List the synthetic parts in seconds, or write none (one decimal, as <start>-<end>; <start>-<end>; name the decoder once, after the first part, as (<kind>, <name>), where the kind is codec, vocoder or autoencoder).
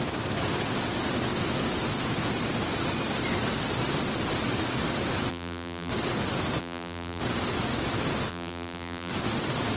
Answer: 5.3-5.9 (vocoder, BigVGAN v2); 6.6-7.2; 8.3-9.1